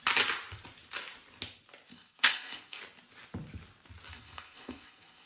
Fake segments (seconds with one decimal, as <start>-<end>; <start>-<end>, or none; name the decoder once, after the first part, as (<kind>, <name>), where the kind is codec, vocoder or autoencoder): 1.9-2.8 (codec, SNAC); 4.1-5.3